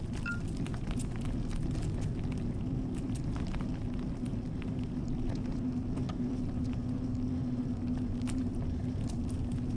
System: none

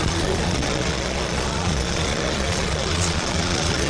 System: vocoder, Vocos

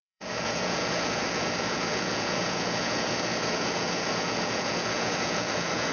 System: vocoder, Vocos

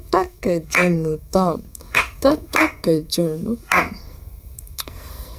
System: codec, SNAC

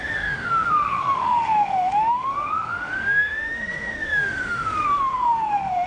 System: autoencoder, DAC-VAE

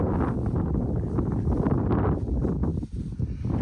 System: none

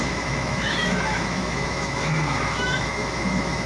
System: autoencoder, DAC-VAE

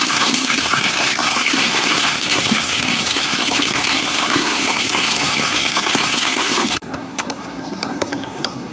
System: codec, SNAC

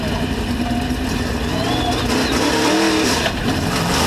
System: none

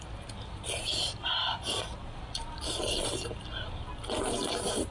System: none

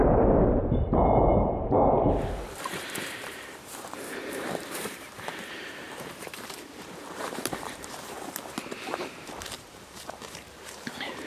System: vocoder, BigVGAN v2